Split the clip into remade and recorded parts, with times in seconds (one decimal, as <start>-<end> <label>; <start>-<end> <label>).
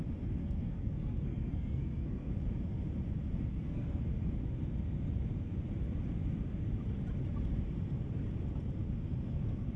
0.0-0.4 recorded; 0.4-2.3 remade; 2.3-3.5 recorded; 3.5-4.0 remade; 4.0-9.8 recorded